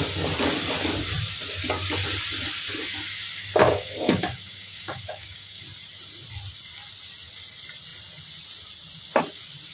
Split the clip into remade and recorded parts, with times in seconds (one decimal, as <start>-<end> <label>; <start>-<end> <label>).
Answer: 0.0-3.6 recorded; 3.6-5.6 remade; 5.6-9.7 recorded